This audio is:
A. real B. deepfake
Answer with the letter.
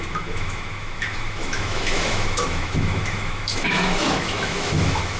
B